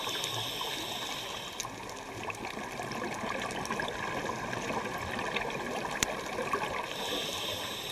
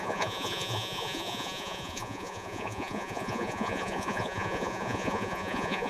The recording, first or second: first